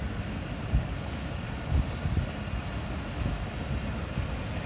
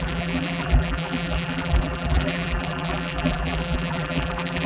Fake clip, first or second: second